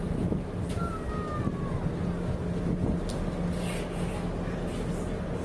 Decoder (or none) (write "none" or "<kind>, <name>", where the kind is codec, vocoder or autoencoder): none